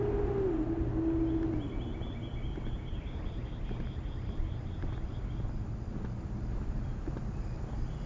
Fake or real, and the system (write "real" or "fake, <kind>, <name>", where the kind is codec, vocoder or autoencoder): real